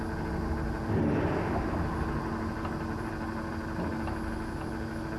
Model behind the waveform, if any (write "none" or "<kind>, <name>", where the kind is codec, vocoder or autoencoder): none